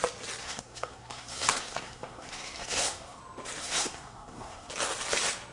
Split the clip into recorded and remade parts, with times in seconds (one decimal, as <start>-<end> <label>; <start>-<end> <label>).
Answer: 0.0-0.4 recorded; 0.4-3.2 remade; 3.2-3.6 recorded; 3.6-4.7 remade; 4.7-5.5 recorded